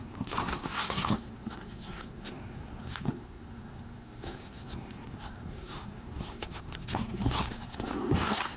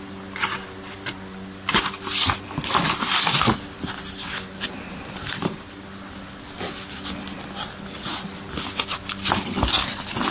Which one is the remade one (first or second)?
first